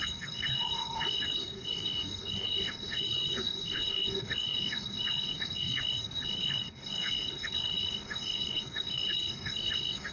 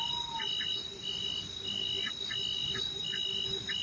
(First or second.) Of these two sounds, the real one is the second